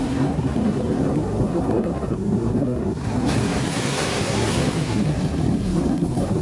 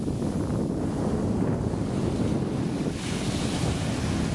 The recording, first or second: second